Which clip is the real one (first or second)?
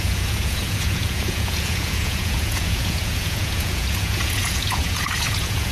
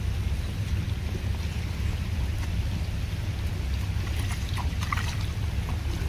second